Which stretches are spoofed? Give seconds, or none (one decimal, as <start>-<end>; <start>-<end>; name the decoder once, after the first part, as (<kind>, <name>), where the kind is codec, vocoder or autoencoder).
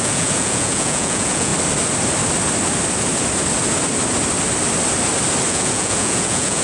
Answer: 0.0-1.5 (vocoder, Vocos); 5.5-6.6